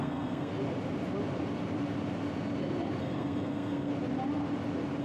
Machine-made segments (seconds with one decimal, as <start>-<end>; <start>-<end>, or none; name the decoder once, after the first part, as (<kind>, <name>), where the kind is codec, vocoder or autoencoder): 0.0-0.5 (codec, SNAC); 3.0-3.9